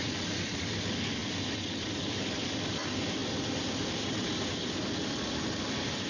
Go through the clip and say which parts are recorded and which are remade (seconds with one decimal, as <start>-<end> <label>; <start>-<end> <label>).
0.0-1.2 remade; 1.2-1.8 recorded; 1.8-3.2 remade; 3.2-5.0 recorded; 5.0-6.1 remade